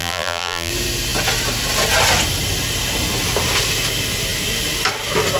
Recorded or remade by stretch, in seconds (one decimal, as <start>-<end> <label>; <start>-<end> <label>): 0.0-0.7 remade; 0.7-5.4 recorded